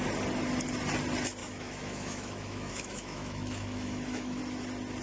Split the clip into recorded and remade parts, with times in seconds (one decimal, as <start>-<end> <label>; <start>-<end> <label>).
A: 0.0-1.4 recorded; 1.4-4.4 remade; 4.4-5.0 recorded